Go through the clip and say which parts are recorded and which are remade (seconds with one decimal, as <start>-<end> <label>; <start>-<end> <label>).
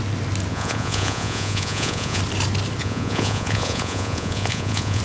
0.0-0.5 recorded; 0.5-2.2 remade; 2.2-2.8 recorded; 2.8-5.0 remade